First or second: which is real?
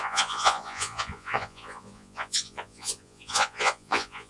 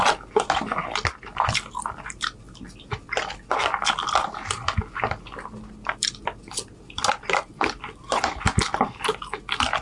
second